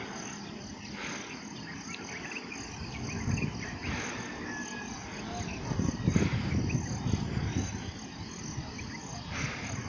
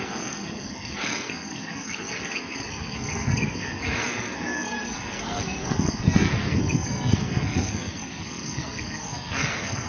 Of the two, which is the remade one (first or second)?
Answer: second